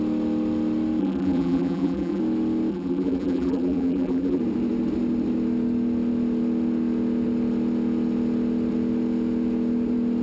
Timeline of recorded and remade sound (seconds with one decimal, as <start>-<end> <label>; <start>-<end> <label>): 0.0-1.0 recorded; 1.0-2.2 remade; 2.2-2.7 recorded; 2.7-4.4 remade; 4.4-10.2 recorded